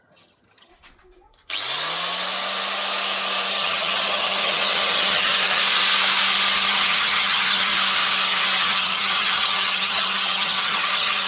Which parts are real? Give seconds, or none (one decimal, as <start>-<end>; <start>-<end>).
0.7-3.5; 5.6-6.7; 7.7-8.6